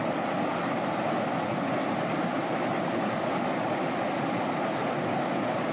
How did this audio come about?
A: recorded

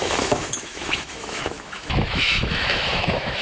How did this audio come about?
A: remade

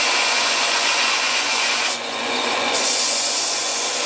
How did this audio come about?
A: remade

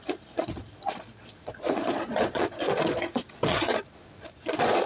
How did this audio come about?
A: remade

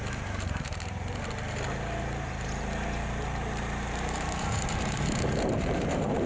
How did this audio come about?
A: remade